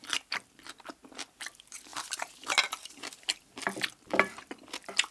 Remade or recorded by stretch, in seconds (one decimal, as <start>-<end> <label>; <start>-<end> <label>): 0.0-5.1 recorded